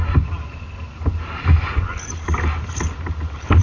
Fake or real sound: real